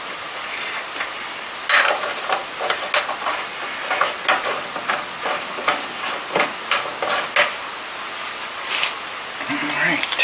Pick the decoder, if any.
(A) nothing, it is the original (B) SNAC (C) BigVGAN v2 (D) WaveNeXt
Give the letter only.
A